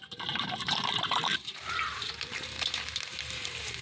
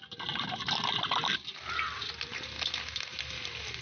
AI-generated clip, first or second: first